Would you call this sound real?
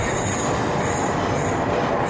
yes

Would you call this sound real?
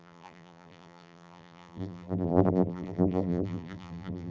no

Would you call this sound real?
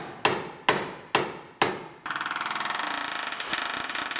yes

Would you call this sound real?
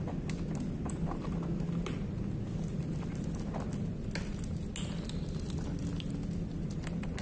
yes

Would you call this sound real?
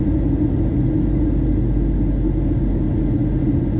yes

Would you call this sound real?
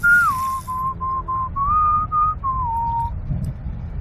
yes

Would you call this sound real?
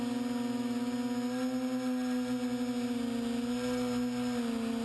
yes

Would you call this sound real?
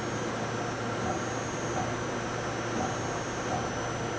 yes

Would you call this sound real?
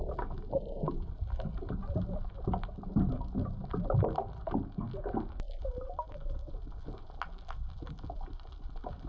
yes